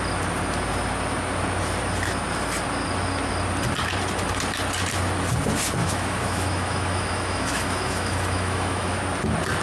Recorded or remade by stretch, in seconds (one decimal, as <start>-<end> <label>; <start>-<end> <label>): 0.0-5.8 recorded; 5.8-9.0 remade; 9.0-9.6 recorded